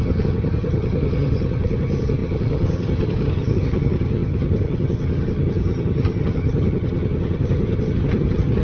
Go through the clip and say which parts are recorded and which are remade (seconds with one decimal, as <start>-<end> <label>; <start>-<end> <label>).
0.0-8.6 remade